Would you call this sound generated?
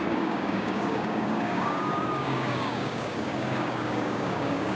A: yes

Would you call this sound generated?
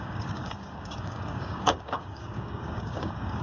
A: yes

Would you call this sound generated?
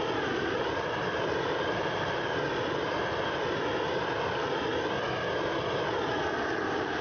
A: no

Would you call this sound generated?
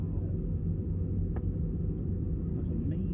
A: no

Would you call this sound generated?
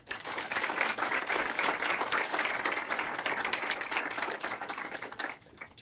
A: yes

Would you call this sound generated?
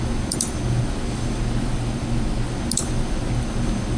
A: no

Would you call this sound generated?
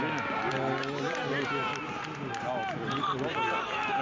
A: no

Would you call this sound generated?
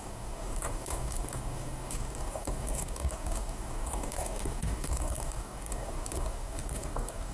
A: yes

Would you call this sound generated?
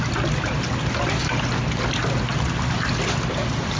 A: no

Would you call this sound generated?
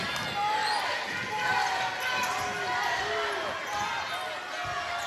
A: no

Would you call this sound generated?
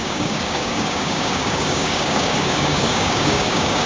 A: yes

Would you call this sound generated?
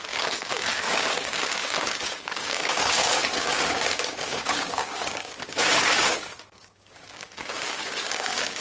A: yes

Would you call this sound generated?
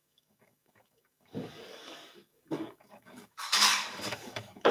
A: yes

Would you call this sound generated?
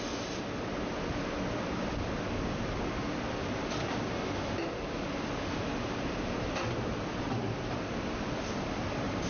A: no